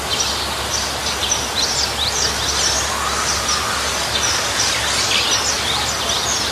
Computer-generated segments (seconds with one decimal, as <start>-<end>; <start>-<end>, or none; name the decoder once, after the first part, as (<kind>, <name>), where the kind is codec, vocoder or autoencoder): none